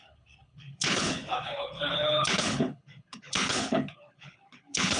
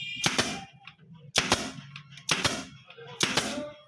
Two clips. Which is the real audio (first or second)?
second